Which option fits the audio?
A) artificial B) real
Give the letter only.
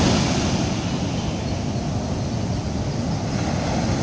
B